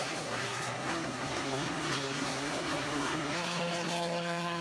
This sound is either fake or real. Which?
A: fake